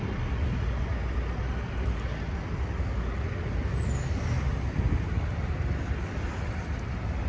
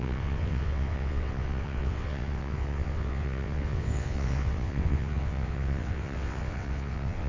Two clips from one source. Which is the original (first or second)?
first